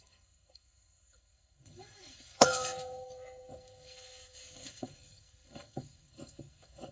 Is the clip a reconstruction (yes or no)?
yes